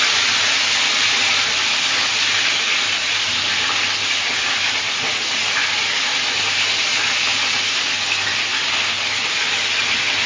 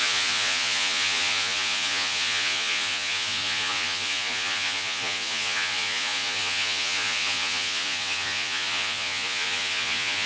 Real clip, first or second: first